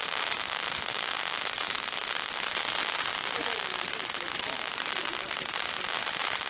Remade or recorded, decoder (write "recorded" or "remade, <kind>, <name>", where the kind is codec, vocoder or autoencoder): recorded